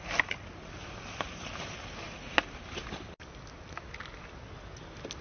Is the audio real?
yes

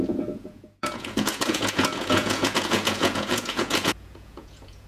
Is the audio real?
no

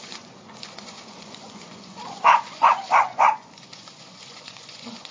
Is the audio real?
no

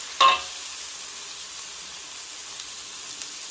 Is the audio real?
yes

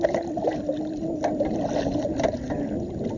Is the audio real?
yes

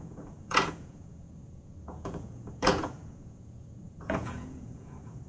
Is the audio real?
no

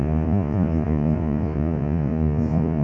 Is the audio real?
no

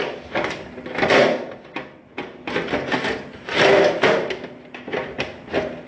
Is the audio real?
yes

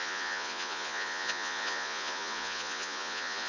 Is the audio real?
no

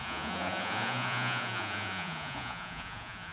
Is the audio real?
no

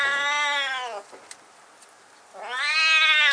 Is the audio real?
yes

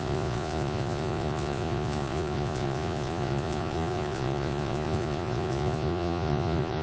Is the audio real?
no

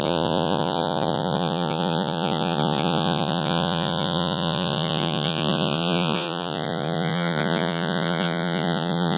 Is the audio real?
no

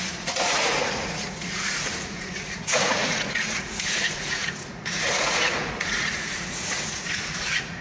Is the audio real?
no